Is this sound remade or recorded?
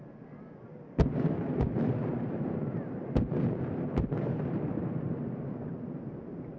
recorded